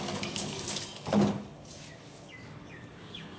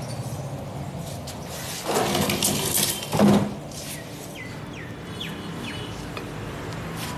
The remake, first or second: first